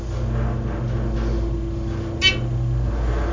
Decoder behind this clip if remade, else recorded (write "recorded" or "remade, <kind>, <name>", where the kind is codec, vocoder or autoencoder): recorded